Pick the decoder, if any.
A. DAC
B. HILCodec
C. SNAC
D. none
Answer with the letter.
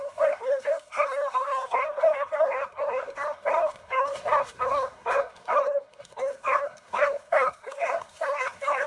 C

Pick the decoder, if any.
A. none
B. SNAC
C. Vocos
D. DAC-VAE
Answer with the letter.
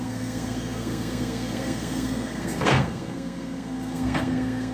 B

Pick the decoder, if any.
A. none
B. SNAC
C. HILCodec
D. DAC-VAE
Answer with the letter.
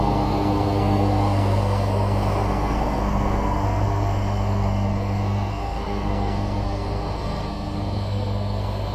B